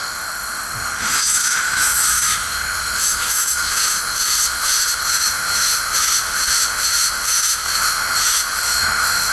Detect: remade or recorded remade